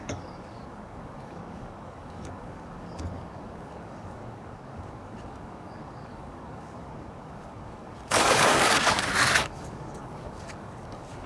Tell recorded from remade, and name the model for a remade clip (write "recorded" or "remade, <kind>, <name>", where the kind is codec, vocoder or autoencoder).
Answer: remade, codec, DAC